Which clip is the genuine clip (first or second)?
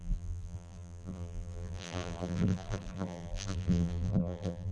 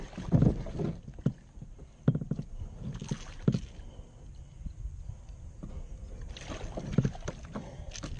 second